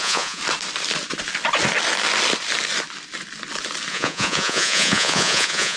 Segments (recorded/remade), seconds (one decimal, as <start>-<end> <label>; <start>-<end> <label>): 0.0-0.4 remade; 0.4-3.9 recorded; 3.9-5.8 remade